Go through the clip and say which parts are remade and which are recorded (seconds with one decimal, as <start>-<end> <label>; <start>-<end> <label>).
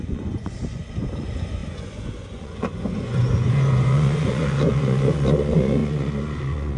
0.0-6.8 remade